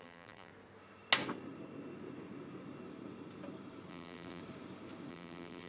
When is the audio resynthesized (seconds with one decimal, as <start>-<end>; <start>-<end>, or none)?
0.0-0.5; 3.9-4.4; 5.1-5.7